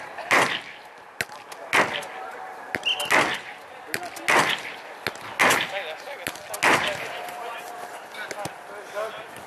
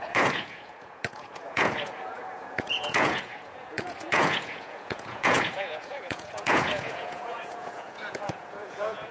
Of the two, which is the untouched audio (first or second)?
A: first